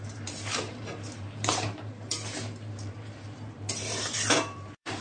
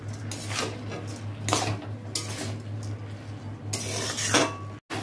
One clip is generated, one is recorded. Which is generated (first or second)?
first